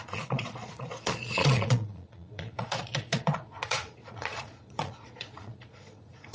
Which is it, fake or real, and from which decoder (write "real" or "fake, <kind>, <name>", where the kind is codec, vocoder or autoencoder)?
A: fake, vocoder, Vocos